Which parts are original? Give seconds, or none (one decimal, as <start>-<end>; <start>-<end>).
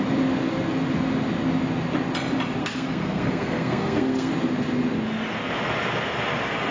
0.0-2.6; 4.3-6.7